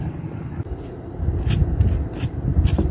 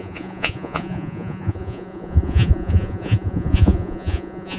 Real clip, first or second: first